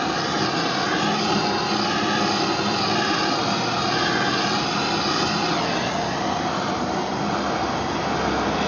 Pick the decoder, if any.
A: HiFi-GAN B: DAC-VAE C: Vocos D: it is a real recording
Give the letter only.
D